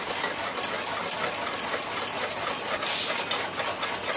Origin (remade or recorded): recorded